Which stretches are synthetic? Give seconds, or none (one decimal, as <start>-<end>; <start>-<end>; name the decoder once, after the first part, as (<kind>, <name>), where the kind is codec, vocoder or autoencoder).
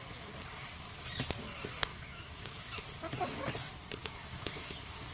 1.9-2.8 (autoencoder, DAC-VAE); 4.0-5.1